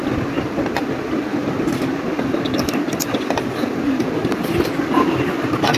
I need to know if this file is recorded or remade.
recorded